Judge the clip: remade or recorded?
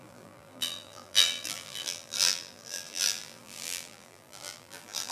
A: remade